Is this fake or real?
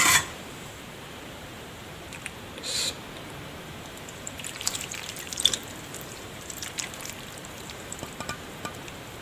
fake